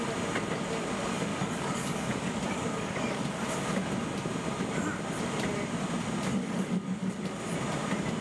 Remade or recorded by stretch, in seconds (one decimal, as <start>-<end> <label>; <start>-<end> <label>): 0.0-1.3 recorded; 1.3-3.4 remade; 3.4-6.3 recorded; 6.3-7.1 remade; 7.1-8.2 recorded